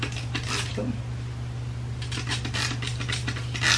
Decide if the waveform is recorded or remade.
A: recorded